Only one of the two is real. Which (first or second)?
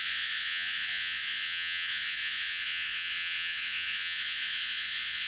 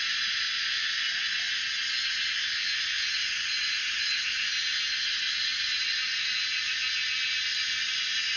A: second